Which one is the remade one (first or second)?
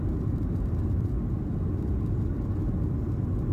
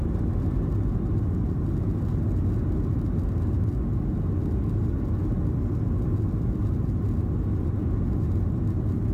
first